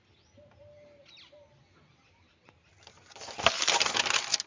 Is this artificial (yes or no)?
no